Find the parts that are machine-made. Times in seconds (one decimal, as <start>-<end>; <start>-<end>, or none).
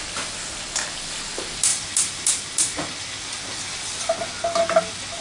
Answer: none